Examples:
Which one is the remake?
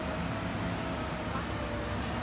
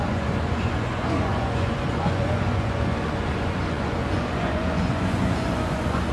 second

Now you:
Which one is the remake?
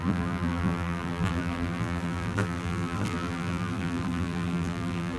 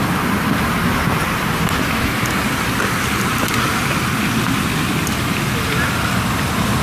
first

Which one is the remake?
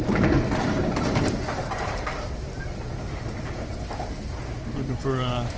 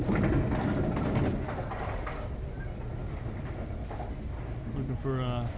first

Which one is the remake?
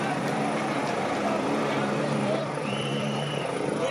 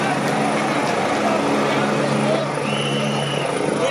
first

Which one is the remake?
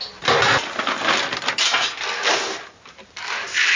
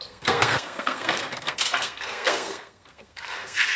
second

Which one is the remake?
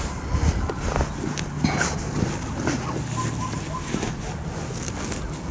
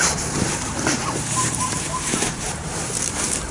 second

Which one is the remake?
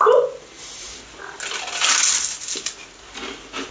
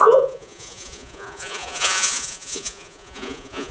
second